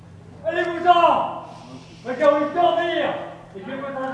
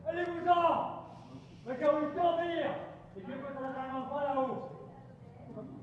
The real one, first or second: first